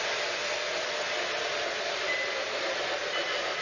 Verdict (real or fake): real